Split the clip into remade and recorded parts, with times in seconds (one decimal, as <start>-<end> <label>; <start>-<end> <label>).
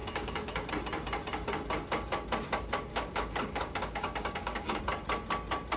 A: 0.0-0.7 remade; 0.7-2.9 recorded; 2.9-4.8 remade; 4.8-5.8 recorded